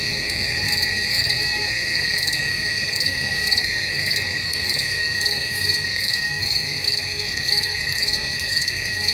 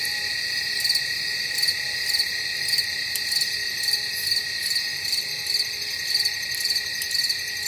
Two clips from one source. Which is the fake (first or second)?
first